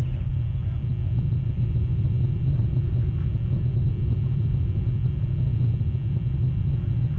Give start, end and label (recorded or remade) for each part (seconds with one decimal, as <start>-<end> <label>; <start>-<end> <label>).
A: 0.0-7.2 recorded